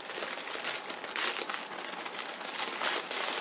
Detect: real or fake real